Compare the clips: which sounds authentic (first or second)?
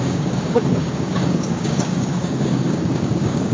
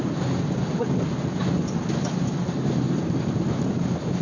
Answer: second